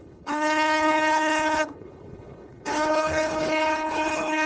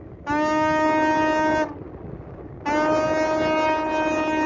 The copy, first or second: first